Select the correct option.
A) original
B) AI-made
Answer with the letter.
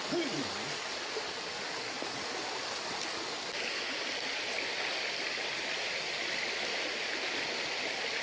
A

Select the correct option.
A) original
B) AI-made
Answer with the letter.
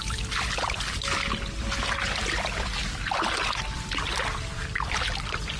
A